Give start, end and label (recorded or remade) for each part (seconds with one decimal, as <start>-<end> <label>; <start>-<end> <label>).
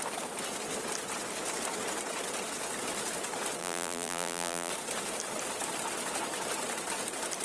0.0-3.6 recorded; 3.6-4.7 remade; 4.7-7.4 recorded